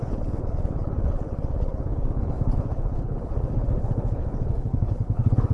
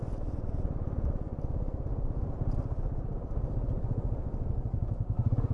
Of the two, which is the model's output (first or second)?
first